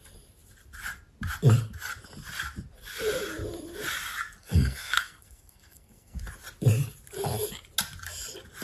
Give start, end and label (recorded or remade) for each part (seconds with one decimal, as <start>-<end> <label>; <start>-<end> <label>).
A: 0.0-4.4 recorded; 4.4-6.2 remade; 6.2-8.6 recorded